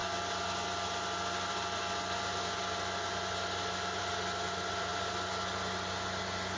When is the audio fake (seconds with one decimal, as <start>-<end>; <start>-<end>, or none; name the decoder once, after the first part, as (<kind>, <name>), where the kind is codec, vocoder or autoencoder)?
none